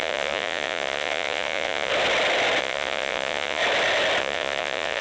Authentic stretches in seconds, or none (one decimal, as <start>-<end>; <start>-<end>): 1.9-2.6; 3.6-4.2